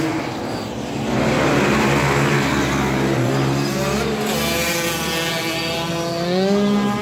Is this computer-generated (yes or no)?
no